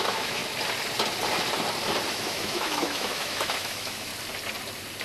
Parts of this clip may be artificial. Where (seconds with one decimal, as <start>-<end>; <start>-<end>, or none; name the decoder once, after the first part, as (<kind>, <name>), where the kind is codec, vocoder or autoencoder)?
0.0-0.4 (autoencoder, DAC-VAE); 2.1-4.1

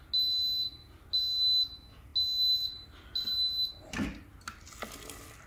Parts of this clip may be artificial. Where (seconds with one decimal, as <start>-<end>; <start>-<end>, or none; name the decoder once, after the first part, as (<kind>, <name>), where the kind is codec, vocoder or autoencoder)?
none

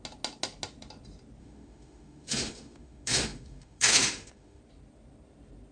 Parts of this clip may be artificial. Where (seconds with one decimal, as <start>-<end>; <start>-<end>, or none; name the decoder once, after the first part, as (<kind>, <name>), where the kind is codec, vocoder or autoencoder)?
1.4-4.6 (autoencoder, DAC-VAE)

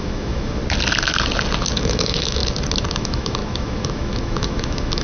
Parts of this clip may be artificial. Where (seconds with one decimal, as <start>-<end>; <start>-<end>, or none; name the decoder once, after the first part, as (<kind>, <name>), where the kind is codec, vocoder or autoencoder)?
0.0-0.6 (autoencoder, DAC-VAE); 1.8-2.4; 2.9-5.0

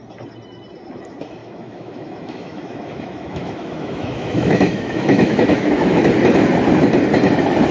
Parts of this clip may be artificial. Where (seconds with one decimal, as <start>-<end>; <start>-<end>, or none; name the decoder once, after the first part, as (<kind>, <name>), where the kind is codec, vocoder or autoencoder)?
1.4-6.0 (autoencoder, DAC-VAE)

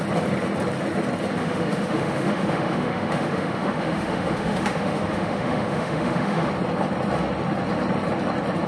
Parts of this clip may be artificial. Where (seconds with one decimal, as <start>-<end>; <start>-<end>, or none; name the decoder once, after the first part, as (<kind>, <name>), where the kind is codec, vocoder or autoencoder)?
1.4-6.5 (autoencoder, DAC-VAE)